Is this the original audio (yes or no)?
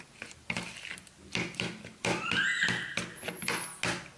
yes